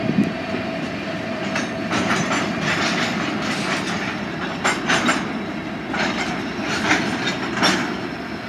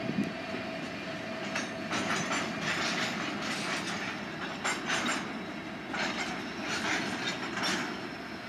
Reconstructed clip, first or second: first